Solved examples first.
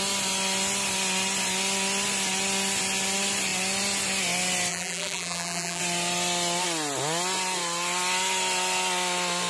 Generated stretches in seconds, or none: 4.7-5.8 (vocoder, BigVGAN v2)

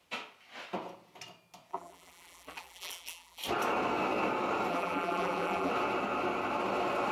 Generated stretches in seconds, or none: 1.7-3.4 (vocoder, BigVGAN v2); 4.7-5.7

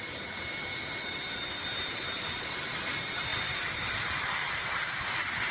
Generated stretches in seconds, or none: 0.0-5.5 (vocoder, BigVGAN v2)

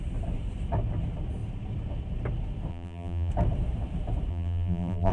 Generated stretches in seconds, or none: 2.7-3.3 (vocoder, BigVGAN v2); 4.3-5.1

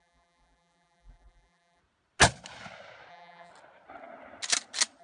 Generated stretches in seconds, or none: 0.0-1.8 (vocoder, BigVGAN v2); 3.1-3.5